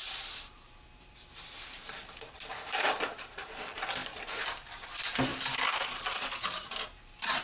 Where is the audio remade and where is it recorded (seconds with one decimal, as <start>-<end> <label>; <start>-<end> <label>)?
0.0-5.3 remade; 5.3-5.9 recorded; 5.9-7.4 remade